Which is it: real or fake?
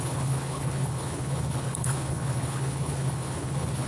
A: fake